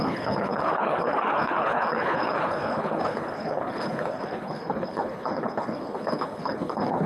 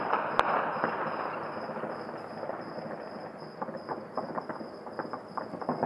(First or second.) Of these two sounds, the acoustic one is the second